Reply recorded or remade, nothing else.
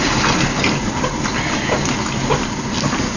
recorded